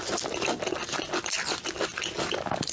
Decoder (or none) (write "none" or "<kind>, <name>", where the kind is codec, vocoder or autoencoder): none